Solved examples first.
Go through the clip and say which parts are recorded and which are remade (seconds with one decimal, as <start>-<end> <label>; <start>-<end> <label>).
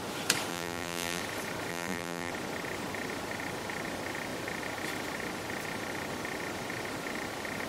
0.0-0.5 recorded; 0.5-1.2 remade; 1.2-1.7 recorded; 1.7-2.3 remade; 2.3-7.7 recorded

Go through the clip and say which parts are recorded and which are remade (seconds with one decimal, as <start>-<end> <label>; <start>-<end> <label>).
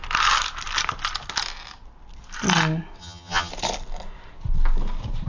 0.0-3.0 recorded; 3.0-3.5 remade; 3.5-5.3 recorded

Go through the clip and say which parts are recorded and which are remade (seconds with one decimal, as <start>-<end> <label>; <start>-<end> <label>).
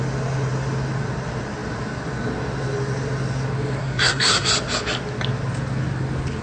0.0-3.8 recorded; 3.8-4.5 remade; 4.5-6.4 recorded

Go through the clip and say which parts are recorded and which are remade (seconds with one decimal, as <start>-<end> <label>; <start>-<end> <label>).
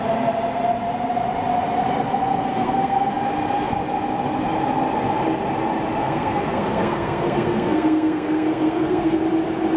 0.0-2.5 recorded; 2.5-3.1 remade; 3.1-6.0 recorded; 6.0-9.2 remade; 9.2-9.8 recorded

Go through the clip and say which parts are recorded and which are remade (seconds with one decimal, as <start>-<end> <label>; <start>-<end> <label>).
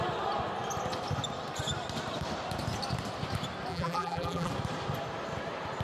0.0-3.7 recorded; 3.7-4.5 remade; 4.5-5.8 recorded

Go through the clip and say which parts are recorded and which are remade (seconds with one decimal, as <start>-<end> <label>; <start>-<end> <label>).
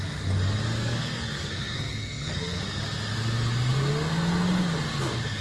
0.0-0.8 recorded; 0.8-2.6 remade; 2.6-5.4 recorded